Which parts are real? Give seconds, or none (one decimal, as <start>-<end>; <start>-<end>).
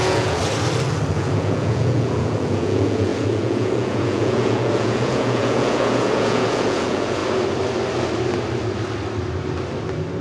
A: 0.4-1.1; 7.2-10.2